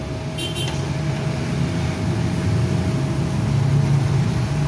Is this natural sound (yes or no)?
yes